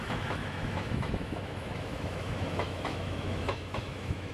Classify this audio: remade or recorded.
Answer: remade